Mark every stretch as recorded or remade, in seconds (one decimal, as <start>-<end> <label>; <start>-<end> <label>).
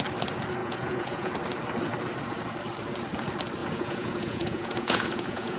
0.0-0.6 recorded; 0.6-1.3 remade; 1.3-3.6 recorded; 3.6-5.6 remade